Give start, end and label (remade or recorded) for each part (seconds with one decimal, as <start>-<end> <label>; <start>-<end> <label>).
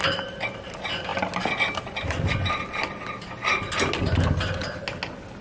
0.0-5.4 recorded